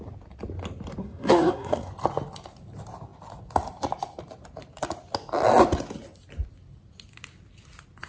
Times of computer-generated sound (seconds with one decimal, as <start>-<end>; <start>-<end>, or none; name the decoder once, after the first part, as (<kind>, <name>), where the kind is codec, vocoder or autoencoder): 1.0-1.9 (codec, SNAC)